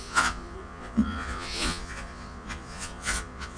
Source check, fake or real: fake